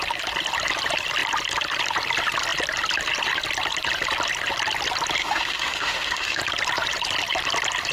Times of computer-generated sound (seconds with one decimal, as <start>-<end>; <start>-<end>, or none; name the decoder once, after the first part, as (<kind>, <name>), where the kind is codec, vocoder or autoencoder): 5.2-6.4 (autoencoder, DAC-VAE)